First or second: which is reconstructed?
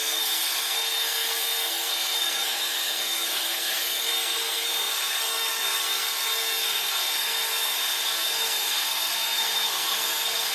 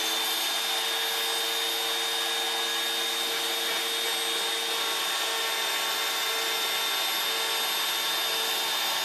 first